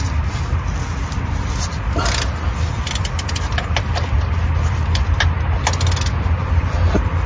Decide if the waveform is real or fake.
real